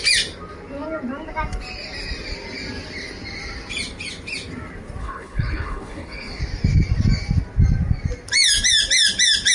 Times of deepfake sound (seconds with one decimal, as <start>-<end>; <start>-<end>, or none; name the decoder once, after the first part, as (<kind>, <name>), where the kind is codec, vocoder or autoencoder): 5.0-6.4 (codec, HILCodec)